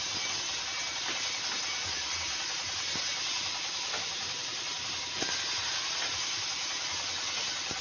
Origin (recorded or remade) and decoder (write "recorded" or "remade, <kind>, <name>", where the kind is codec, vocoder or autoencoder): recorded